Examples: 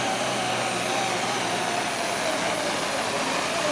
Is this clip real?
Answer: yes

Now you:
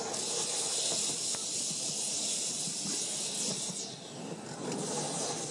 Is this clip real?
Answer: yes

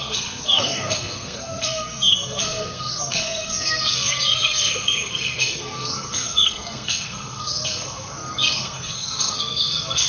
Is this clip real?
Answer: no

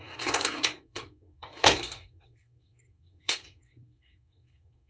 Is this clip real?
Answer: no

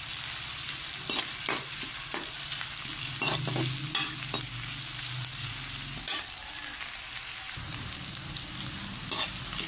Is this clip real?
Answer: yes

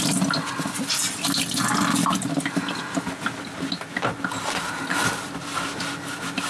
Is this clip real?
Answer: yes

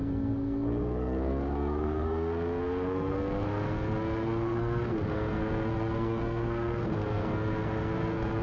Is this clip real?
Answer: no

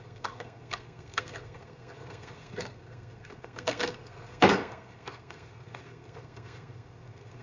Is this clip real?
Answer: no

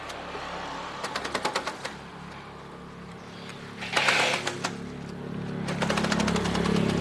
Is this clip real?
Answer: yes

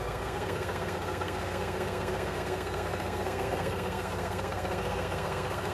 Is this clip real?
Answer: no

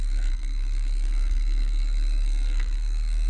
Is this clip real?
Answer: no